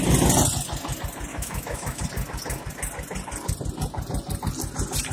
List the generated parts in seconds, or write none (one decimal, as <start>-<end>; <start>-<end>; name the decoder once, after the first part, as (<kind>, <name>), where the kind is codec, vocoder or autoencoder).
1.3-2.0 (autoencoder, DAC-VAE)